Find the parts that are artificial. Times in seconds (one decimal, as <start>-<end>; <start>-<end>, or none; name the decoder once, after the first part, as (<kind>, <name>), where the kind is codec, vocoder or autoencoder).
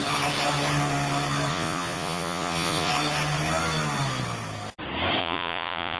1.5-2.9 (vocoder, Vocos); 5.2-6.0